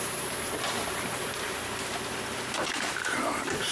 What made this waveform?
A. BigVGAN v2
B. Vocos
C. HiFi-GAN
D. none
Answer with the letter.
A